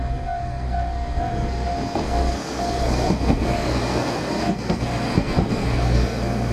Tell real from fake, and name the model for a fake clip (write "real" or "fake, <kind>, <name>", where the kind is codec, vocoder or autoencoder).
fake, codec, SNAC